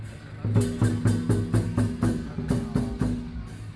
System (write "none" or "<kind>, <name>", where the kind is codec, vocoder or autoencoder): none